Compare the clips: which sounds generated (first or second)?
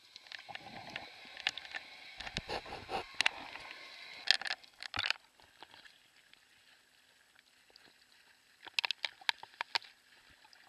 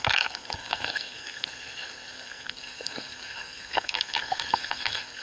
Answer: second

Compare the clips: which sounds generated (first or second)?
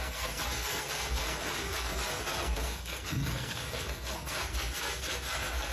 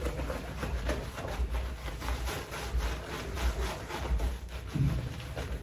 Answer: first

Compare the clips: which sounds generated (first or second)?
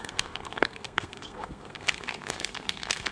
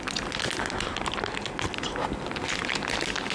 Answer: first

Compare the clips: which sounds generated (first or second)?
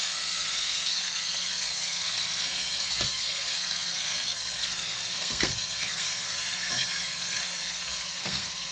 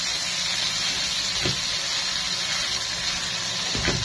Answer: first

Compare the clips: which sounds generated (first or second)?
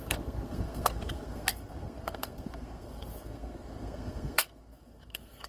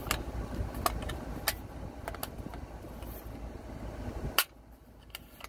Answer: first